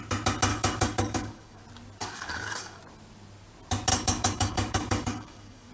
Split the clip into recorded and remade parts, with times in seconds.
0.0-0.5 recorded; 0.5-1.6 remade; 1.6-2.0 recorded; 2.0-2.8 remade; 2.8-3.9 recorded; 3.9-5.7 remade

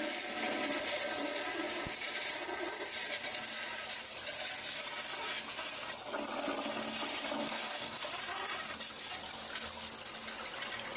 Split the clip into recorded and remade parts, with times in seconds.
0.0-7.4 recorded; 7.4-8.0 remade; 8.0-11.0 recorded

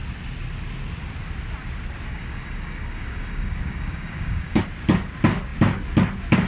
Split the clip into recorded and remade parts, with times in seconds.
0.0-2.1 recorded; 2.1-4.6 remade; 4.6-6.5 recorded

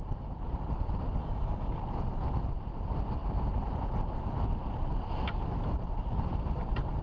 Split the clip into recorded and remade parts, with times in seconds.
0.0-1.2 recorded; 1.2-1.8 remade; 1.8-7.0 recorded

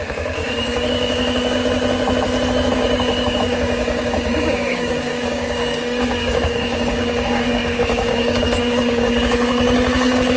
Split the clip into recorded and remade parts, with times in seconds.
0.0-1.6 remade; 1.6-2.5 recorded; 2.5-10.4 remade

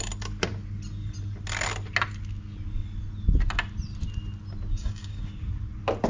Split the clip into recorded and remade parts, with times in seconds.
0.0-4.7 recorded; 4.7-5.2 remade; 5.2-6.1 recorded

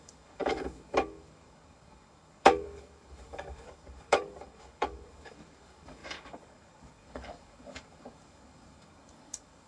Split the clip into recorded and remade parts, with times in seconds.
0.0-9.7 remade